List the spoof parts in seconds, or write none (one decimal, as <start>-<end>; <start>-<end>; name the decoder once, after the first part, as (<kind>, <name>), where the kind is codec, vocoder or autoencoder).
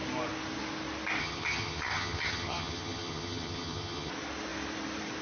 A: 1.2-4.1 (vocoder, HiFi-GAN)